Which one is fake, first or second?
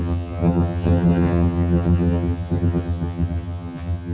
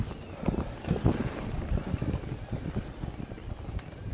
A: first